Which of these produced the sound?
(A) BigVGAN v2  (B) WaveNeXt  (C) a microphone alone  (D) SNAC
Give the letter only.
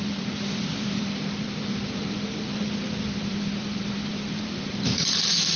A